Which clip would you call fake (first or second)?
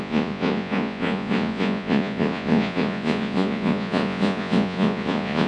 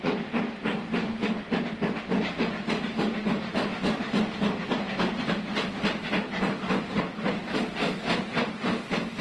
first